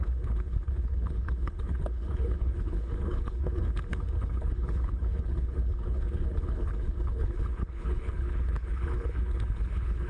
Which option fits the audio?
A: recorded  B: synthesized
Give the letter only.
B